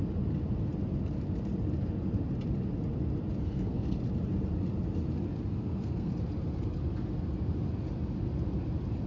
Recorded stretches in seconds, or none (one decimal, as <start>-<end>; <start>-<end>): 0.0-3.4; 4.0-5.6; 6.1-9.1